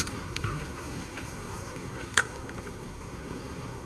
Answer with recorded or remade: remade